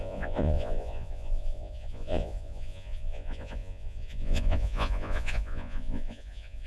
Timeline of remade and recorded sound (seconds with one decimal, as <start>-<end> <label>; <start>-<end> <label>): 0.0-6.7 remade